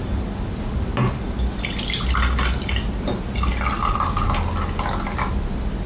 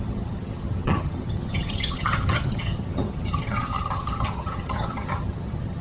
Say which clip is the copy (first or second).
second